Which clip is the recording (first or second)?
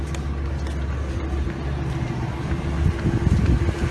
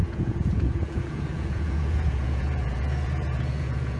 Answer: first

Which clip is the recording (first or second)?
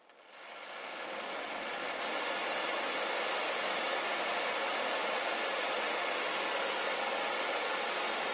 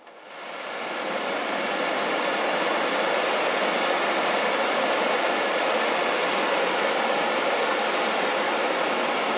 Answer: first